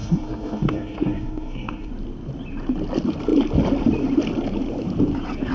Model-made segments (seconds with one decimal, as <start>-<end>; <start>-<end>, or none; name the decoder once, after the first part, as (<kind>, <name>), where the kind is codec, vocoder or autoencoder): 0.0-1.9 (codec, SNAC)